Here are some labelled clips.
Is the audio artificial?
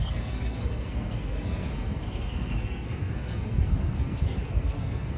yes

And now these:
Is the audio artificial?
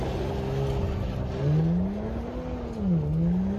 no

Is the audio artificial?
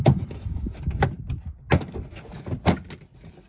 no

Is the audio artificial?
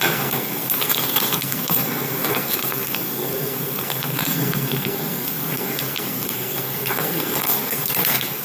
yes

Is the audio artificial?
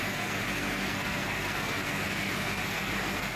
yes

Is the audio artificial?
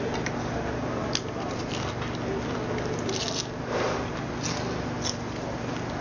no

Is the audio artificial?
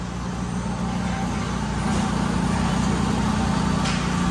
no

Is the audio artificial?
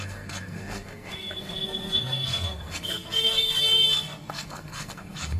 yes